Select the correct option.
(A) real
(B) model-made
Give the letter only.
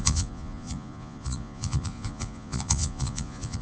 B